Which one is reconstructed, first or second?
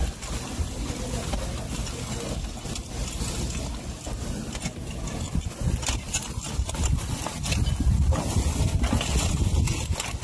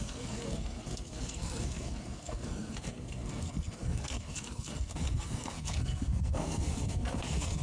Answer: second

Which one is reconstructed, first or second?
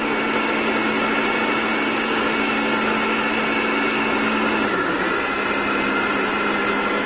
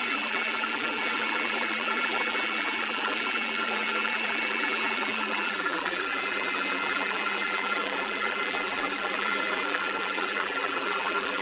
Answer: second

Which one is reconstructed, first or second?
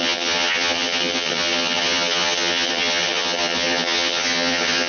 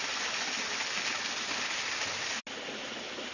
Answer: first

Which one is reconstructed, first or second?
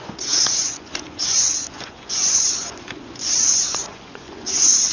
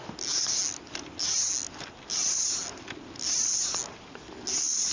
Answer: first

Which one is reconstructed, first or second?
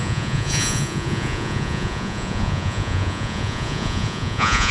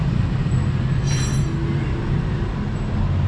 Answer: first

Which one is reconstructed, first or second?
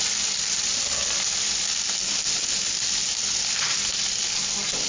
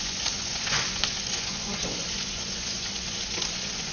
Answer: second